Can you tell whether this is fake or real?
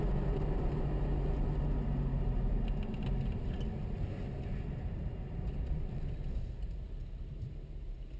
real